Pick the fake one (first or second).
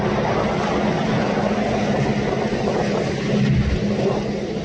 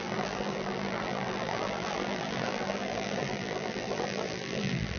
second